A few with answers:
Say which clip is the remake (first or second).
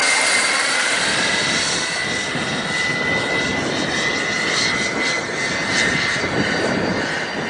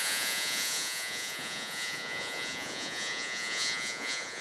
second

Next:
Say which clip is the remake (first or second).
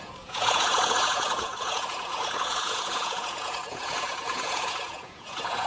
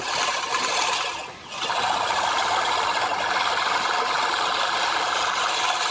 first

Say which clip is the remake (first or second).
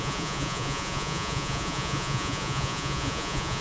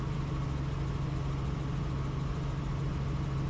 first